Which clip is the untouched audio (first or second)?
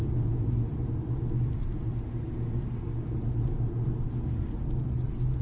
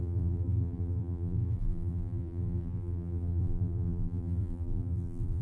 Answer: first